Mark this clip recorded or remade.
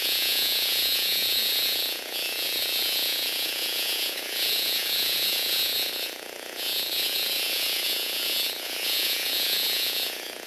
remade